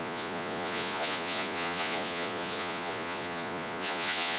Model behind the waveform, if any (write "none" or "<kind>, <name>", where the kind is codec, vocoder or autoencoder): vocoder, Vocos